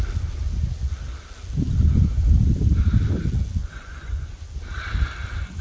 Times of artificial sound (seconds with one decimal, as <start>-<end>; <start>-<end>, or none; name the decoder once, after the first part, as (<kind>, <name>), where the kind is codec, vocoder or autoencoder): 3.6-4.3 (vocoder, Vocos)